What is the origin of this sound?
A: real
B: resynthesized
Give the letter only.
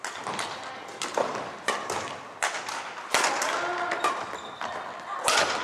A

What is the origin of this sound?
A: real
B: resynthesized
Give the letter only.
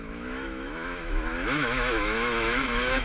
B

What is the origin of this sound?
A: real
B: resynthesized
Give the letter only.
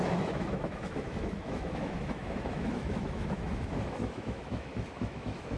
B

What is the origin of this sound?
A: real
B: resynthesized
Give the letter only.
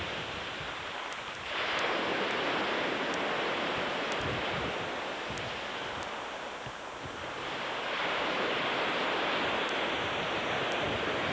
A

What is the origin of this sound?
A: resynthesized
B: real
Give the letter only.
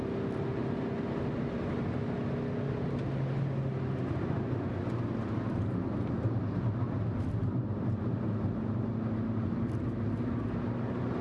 B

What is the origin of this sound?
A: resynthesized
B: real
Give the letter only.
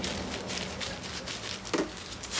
B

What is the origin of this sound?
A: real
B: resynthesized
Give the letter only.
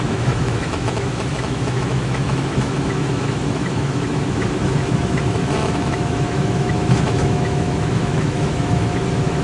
B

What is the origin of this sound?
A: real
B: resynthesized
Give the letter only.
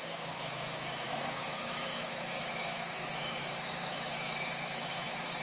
B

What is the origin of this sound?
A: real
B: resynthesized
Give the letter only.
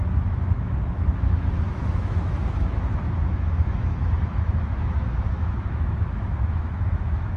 B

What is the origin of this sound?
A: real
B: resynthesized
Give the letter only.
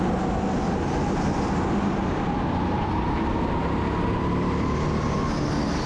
A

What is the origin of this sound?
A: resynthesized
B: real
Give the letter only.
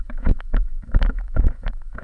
A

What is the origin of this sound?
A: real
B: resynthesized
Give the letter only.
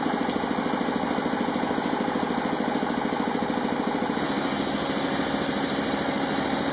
A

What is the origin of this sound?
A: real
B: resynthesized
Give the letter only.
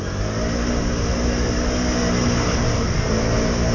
A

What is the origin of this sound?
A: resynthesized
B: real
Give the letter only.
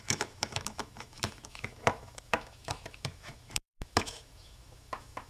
A